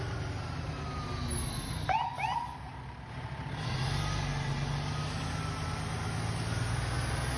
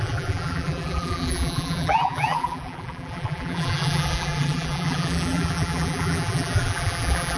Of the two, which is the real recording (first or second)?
first